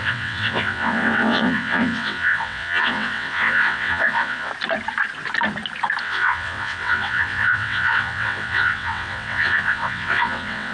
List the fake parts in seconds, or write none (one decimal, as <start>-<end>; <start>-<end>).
0.0-4.5; 6.0-10.7